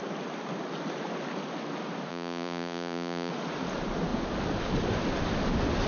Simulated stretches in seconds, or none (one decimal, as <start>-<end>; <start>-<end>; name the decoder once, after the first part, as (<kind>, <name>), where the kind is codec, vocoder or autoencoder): 2.1-3.3 (vocoder, Vocos)